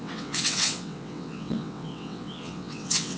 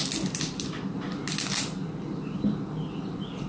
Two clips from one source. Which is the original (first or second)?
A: second